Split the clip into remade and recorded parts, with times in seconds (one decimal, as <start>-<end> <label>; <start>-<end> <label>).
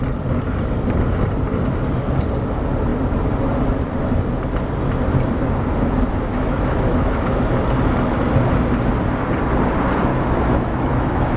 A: 0.0-6.3 recorded; 6.3-7.4 remade; 7.4-10.1 recorded; 10.1-11.4 remade